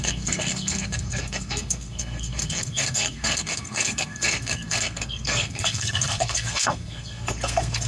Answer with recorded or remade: remade